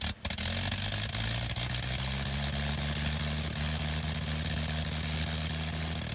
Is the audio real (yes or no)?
yes